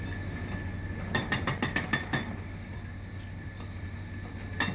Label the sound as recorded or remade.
recorded